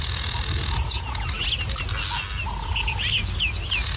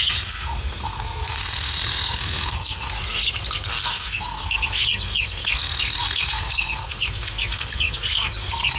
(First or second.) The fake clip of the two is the second